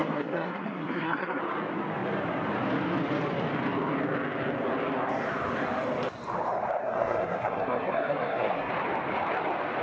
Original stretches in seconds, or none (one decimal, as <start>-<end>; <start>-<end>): 1.4-6.8; 8.7-9.8